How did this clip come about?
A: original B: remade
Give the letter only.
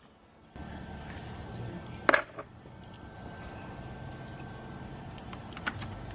A